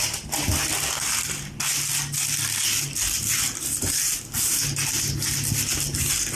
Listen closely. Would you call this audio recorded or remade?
recorded